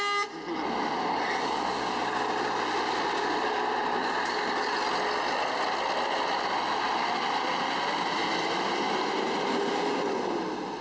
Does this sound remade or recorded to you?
recorded